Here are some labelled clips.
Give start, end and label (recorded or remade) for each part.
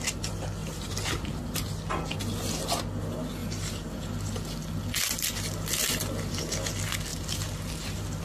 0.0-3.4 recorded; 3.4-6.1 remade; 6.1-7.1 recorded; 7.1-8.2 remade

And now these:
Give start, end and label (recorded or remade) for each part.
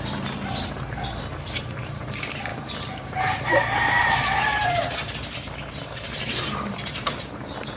0.0-7.8 remade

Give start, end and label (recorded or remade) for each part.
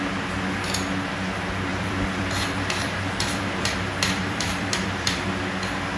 0.0-1.7 recorded; 1.7-5.3 remade; 5.3-6.0 recorded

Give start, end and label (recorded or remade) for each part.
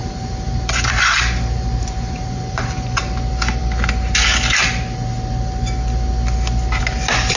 0.0-3.0 remade; 3.0-7.4 recorded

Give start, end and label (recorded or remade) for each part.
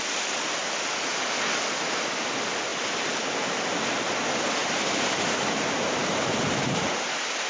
0.0-4.6 recorded; 4.6-7.5 remade